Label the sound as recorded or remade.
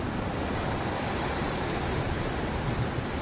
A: recorded